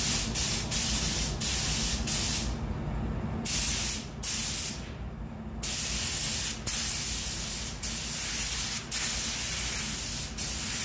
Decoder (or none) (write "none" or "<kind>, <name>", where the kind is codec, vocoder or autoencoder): none